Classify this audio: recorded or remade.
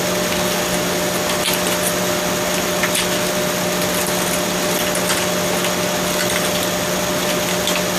recorded